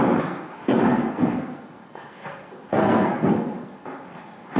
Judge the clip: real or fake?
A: fake